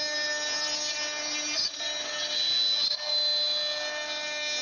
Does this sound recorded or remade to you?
recorded